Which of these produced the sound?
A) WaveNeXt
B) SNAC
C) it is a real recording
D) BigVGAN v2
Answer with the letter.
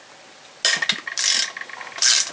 C